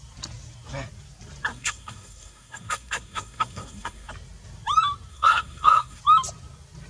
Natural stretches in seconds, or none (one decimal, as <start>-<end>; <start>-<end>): 0.0-1.5; 4.1-5.1; 6.0-6.9